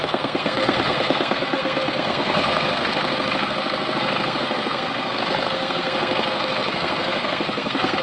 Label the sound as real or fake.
fake